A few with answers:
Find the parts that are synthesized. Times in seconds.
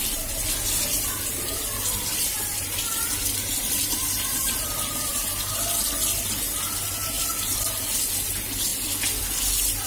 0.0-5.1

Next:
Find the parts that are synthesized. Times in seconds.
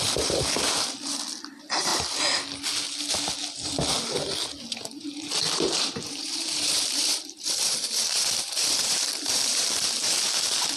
5.0-10.1